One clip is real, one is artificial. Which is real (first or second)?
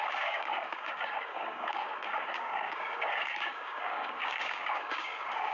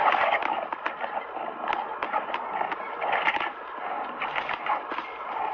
second